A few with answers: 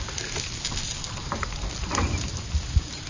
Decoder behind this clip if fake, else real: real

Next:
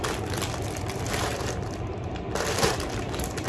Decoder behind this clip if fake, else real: fake, vocoder, BigVGAN v2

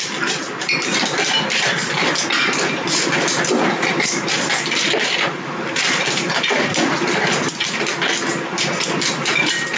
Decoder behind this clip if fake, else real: real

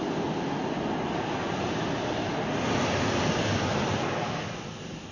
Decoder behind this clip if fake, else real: real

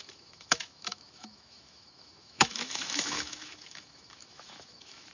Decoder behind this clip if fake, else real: fake, autoencoder, DAC-VAE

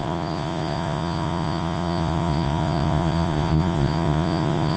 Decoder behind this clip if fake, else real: fake, vocoder, Vocos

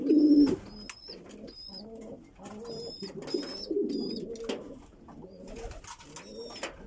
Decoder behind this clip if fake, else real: real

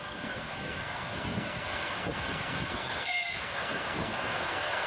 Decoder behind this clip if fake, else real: fake, codec, SNAC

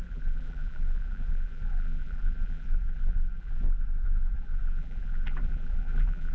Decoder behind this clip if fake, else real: fake, vocoder, BigVGAN v2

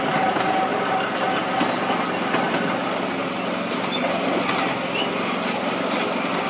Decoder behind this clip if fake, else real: real